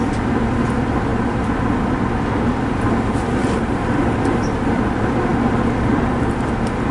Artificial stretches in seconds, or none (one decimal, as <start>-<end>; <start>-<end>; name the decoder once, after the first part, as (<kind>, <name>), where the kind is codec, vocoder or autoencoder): 0.0-6.9 (vocoder, BigVGAN v2)